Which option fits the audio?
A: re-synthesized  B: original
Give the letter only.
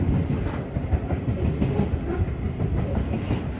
B